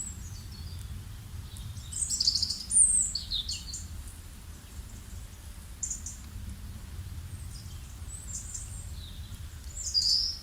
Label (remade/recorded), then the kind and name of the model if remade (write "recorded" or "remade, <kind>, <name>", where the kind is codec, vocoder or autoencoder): recorded